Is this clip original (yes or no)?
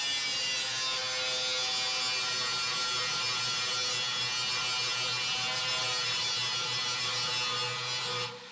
yes